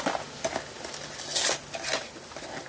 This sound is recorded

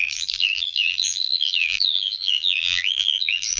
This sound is remade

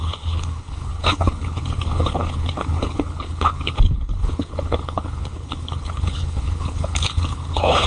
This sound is remade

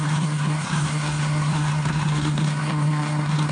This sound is remade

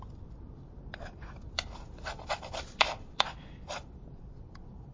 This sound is remade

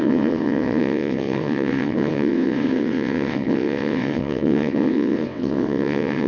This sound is remade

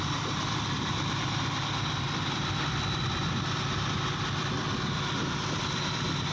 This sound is recorded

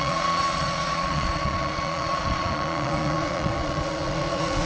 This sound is remade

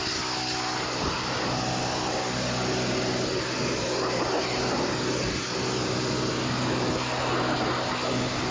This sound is recorded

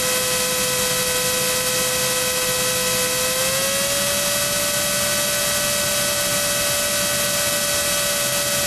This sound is recorded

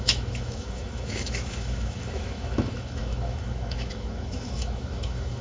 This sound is remade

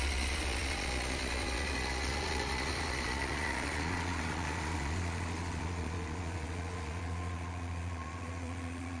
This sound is remade